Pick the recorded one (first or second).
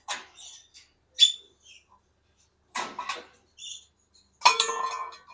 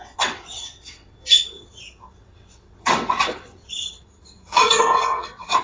first